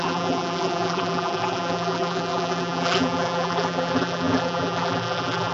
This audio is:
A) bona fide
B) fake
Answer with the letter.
B